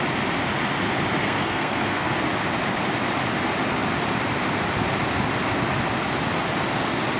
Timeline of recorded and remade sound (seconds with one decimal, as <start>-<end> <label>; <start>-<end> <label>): 0.0-1.2 recorded; 1.2-2.1 remade; 2.1-7.2 recorded